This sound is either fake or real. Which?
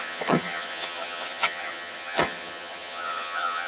fake